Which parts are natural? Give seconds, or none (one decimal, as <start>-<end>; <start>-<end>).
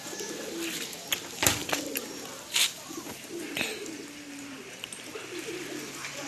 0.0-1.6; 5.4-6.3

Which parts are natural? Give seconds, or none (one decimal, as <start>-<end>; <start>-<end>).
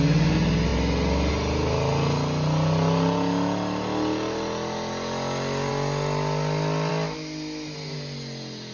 0.0-8.7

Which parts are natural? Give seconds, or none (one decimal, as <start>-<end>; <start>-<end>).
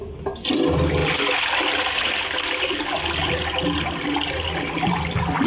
0.0-1.0; 2.7-5.5